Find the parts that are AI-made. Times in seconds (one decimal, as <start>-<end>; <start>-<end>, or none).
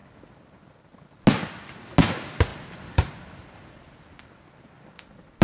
2.5-5.4